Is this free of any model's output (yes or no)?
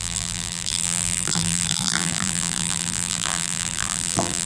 no